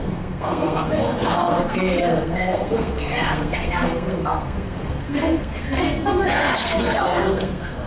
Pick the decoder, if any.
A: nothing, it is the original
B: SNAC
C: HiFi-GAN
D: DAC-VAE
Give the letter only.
B